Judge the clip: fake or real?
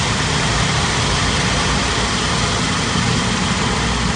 real